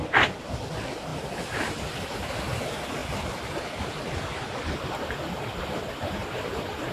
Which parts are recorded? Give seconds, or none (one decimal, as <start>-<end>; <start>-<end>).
0.0-6.9

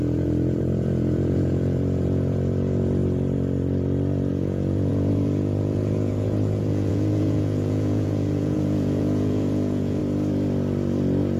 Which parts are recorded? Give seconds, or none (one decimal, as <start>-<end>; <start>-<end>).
3.0-4.3; 10.0-11.4

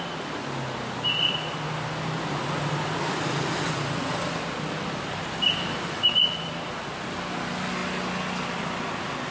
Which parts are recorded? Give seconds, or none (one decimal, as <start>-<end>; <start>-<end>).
0.0-9.3

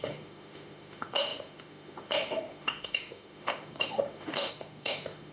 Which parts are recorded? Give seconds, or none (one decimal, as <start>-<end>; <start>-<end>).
none

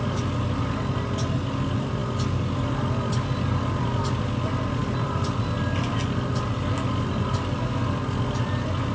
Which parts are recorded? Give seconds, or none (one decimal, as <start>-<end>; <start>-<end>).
0.0-8.9

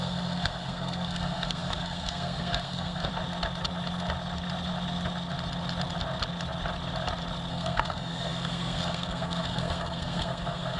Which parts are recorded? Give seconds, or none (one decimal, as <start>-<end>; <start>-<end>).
3.1-7.5

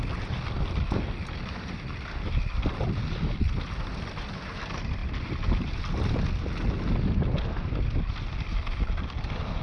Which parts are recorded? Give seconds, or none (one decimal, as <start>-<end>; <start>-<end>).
0.0-9.6

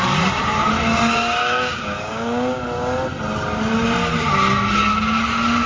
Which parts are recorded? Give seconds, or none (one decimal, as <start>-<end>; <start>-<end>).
0.0-1.4; 2.6-5.7